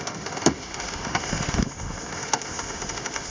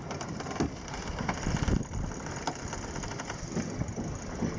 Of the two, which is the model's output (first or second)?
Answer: first